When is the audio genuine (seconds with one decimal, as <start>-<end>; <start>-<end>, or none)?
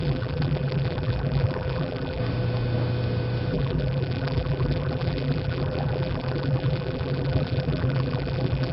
2.2-3.5